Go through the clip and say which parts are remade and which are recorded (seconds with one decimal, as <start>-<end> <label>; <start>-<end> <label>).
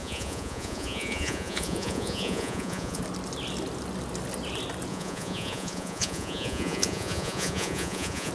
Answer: 0.0-3.0 remade; 3.0-4.9 recorded; 4.9-8.3 remade